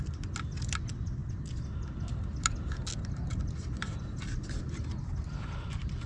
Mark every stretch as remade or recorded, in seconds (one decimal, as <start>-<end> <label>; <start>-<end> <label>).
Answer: 0.0-6.1 recorded